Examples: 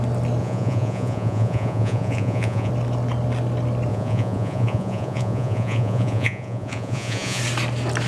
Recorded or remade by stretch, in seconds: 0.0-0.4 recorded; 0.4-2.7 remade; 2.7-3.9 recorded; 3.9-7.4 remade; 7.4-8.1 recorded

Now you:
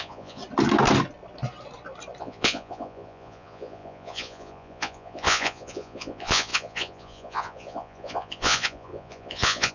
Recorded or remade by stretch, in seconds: 0.0-0.4 remade; 0.4-2.2 recorded; 2.2-9.7 remade

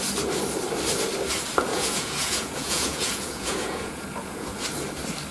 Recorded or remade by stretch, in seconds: 0.0-1.7 recorded; 1.7-4.6 remade; 4.6-5.3 recorded

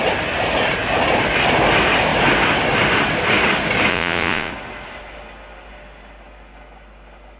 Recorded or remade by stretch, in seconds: 0.0-3.9 recorded; 3.9-4.5 remade; 4.5-7.4 recorded

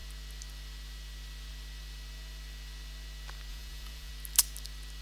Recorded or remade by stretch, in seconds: 0.0-3.5 recorded; 3.5-4.1 remade; 4.1-5.0 recorded